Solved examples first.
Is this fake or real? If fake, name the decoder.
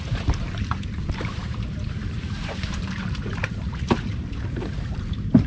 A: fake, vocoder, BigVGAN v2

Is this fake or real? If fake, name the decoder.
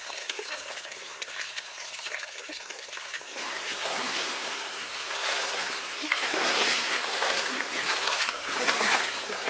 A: fake, codec, SNAC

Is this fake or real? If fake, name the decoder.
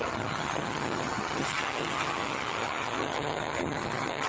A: fake, vocoder, HiFi-GAN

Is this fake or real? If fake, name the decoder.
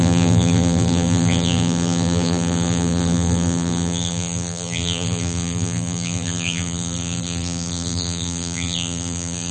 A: fake, vocoder, BigVGAN v2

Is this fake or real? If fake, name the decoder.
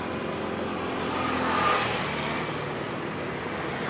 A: real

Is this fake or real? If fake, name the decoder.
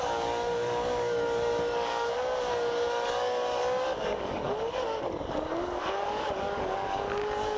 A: fake, codec, DAC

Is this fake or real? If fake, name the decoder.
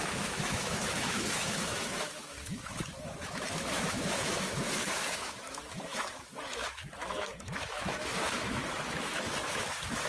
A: fake, autoencoder, DAC-VAE